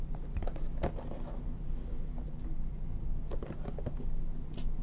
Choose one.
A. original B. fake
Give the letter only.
A